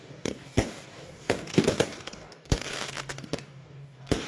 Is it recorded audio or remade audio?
remade